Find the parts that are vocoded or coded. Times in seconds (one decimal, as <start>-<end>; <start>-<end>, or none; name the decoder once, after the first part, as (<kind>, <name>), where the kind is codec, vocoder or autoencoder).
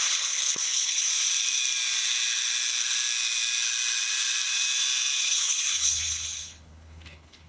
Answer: 0.0-1.1 (codec, HILCodec); 5.2-7.5